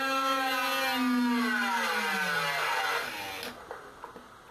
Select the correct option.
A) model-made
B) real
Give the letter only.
B